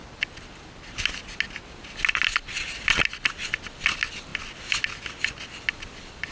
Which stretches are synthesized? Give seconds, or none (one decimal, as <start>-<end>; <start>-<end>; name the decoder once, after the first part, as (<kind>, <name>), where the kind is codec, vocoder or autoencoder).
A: none